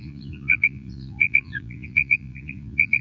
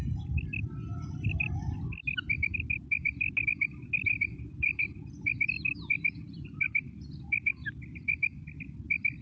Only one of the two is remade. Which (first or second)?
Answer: first